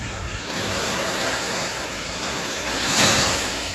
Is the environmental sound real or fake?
fake